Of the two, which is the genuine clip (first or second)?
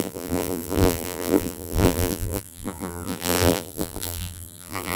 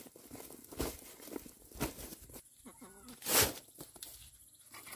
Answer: second